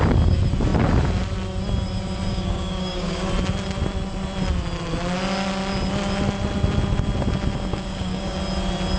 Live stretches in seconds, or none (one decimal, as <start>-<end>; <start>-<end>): 0.0-2.3; 3.3-7.7; 8.4-9.0

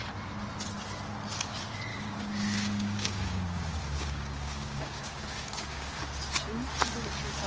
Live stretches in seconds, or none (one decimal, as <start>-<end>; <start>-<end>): 0.0-1.9; 6.0-7.5

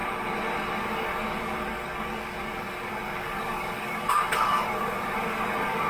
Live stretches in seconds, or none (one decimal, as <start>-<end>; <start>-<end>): 0.0-0.8

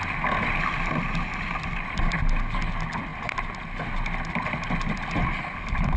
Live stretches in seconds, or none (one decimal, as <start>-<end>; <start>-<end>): 0.0-6.0

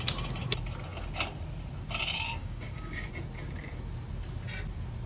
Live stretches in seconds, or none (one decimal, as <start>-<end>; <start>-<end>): 0.0-2.4; 3.1-5.1

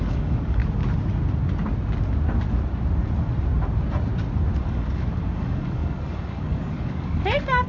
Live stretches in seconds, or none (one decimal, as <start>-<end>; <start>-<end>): 0.6-4.6

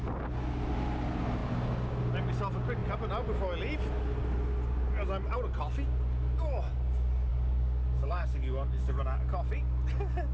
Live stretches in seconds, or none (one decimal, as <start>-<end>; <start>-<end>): 0.0-7.3; 9.0-10.3

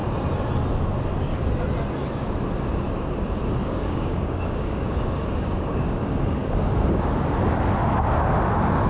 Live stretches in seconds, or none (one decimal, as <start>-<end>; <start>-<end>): 0.0-3.6; 7.3-8.9